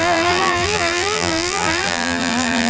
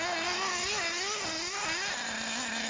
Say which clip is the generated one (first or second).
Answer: first